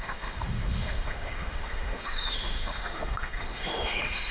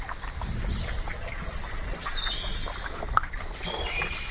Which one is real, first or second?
second